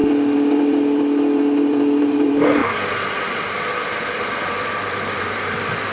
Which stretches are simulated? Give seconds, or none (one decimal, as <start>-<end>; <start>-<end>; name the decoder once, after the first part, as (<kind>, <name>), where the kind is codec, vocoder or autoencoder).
2.0-2.6 (vocoder, BigVGAN v2); 4.2-5.9